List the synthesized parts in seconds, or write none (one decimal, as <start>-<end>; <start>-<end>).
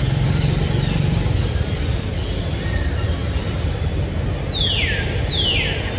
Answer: none